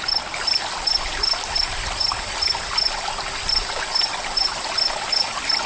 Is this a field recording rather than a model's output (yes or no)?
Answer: yes